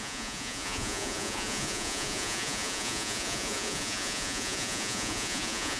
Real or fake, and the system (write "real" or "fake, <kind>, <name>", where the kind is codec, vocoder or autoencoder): fake, vocoder, Vocos